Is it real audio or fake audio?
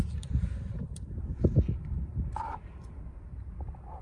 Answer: fake